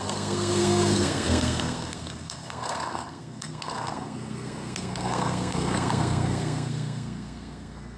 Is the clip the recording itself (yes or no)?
no